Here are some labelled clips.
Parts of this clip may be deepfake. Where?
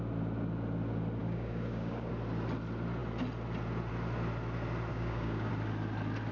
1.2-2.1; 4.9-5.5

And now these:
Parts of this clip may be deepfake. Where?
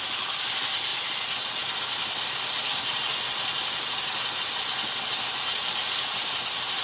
0.0-0.9; 2.5-3.1; 4.8-6.8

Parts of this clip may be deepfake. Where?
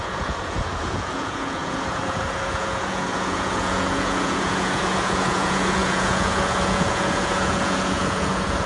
0.0-8.7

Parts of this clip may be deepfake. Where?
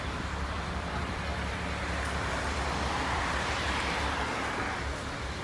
0.0-5.4